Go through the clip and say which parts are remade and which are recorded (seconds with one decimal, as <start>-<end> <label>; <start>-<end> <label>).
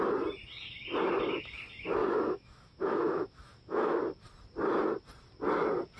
0.0-2.0 recorded; 2.0-4.0 remade; 4.0-6.0 recorded